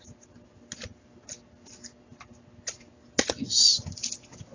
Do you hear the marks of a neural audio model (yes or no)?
no